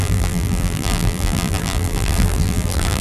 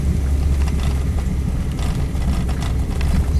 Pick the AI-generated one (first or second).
first